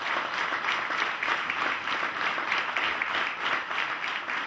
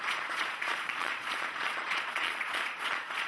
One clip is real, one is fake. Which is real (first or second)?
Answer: first